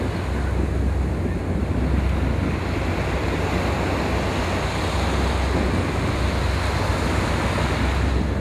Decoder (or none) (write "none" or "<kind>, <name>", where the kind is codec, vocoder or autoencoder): none